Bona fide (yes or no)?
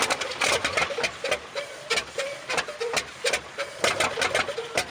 yes